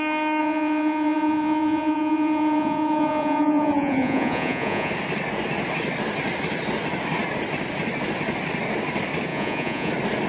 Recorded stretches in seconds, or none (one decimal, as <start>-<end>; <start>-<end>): 0.0-0.4; 4.9-9.3; 9.9-10.3